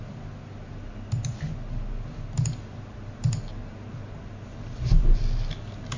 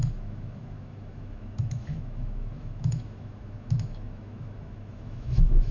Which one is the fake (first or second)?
second